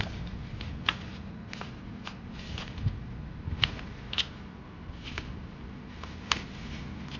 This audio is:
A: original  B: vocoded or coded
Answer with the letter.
A